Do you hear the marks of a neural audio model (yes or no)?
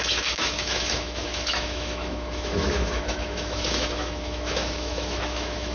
yes